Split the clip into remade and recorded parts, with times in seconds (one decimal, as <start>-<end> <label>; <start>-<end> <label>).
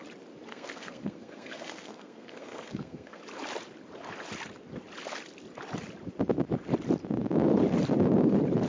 0.0-0.5 recorded; 0.5-3.2 remade; 3.2-8.7 recorded